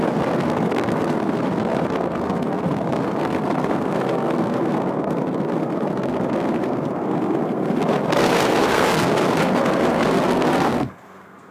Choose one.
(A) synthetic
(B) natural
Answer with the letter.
A